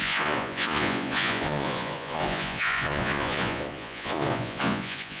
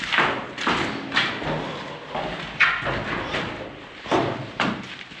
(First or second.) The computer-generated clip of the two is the first